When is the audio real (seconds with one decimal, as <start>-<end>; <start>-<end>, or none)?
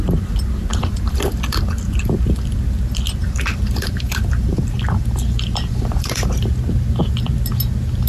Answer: 0.0-0.7; 1.2-3.2; 6.5-8.1